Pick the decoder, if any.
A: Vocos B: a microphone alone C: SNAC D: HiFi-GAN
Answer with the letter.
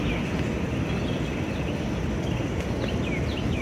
B